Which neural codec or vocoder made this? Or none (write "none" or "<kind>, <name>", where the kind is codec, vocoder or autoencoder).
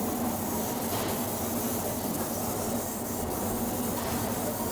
vocoder, BigVGAN v2